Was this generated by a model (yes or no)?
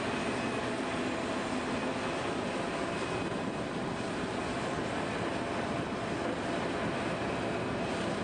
no